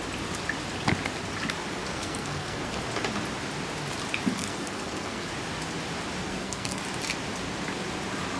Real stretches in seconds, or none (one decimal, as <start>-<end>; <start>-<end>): 0.0-1.8; 2.8-4.3; 5.3-6.2; 6.8-8.4